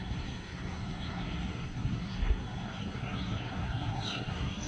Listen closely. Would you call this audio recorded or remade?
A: remade